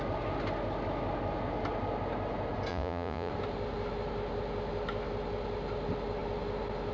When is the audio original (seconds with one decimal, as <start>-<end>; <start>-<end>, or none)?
0.0-2.7; 3.3-6.9

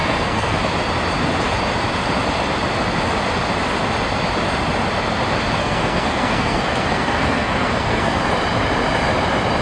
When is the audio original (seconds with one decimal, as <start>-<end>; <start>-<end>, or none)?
0.6-5.6; 8.2-9.6